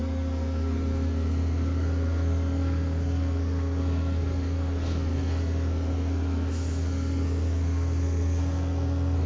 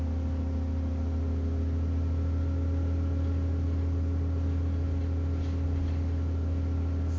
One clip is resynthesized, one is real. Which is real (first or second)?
second